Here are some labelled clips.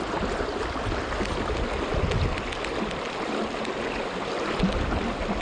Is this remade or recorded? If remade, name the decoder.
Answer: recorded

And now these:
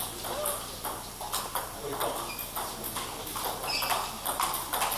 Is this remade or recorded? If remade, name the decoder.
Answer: recorded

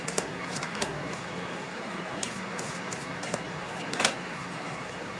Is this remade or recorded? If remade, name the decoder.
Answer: remade, codec, SNAC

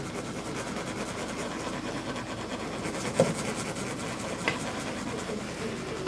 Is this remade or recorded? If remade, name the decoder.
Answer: recorded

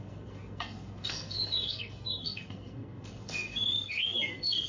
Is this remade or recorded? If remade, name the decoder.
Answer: remade, codec, SNAC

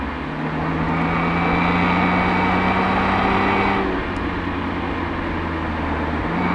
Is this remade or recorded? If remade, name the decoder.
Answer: recorded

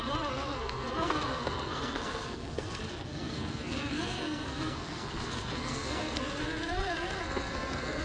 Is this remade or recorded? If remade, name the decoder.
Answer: remade, codec, SNAC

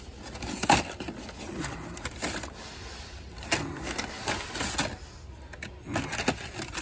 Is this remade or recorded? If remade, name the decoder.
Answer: recorded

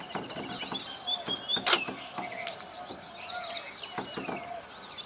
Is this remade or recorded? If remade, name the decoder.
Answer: recorded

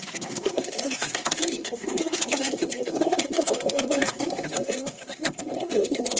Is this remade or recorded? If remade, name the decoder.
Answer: remade, codec, SNAC